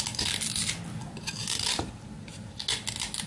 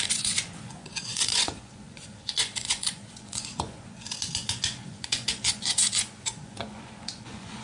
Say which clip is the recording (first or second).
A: first